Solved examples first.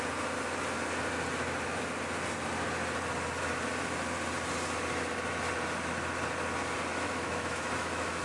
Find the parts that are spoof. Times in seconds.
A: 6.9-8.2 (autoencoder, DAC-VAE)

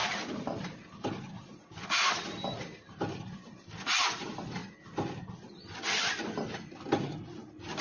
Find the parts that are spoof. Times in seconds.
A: none